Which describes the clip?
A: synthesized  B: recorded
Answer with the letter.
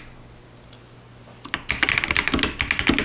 B